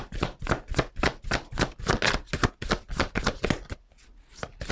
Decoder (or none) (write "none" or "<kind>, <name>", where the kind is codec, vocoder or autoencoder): none